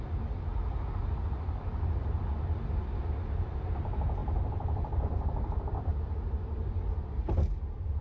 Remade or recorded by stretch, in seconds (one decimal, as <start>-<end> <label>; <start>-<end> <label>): 0.0-4.2 recorded; 4.2-7.3 remade; 7.3-8.0 recorded